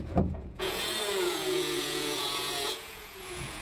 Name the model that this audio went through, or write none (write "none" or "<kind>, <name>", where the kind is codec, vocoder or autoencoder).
vocoder, Vocos